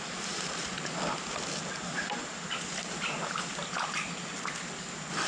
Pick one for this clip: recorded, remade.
recorded